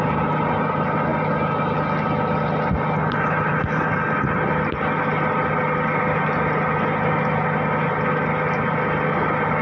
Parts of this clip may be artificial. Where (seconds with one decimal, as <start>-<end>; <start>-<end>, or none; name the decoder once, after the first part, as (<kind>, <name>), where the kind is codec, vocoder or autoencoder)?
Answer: none